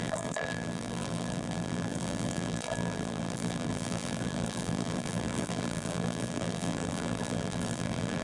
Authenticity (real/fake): fake